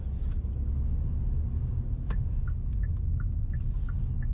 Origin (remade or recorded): recorded